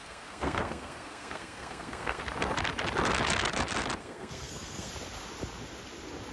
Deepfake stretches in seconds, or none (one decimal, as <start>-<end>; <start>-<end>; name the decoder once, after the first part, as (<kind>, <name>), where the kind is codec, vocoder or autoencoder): 0.0-2.2 (codec, SNAC); 4.0-4.9